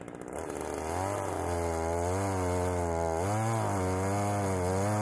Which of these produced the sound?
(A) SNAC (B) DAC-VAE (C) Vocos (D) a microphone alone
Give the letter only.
D